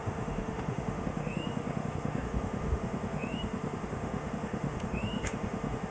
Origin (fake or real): fake